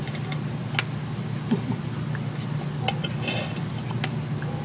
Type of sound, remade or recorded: recorded